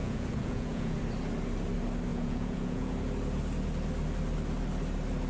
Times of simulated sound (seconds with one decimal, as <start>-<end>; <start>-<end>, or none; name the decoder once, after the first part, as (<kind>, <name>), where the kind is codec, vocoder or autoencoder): 0.0-1.0 (vocoder, Vocos); 2.1-2.9